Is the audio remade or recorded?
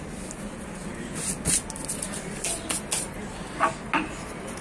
recorded